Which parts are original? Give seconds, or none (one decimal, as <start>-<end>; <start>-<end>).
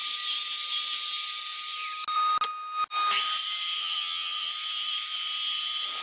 0.0-3.8; 4.5-6.0